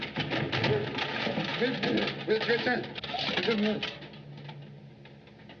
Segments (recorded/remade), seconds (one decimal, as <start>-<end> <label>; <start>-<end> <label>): 0.0-5.6 recorded